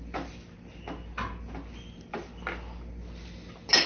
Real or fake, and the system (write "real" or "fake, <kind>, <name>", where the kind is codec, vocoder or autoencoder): real